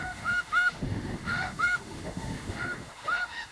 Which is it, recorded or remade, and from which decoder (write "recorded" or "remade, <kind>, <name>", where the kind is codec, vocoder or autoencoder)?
remade, autoencoder, DAC-VAE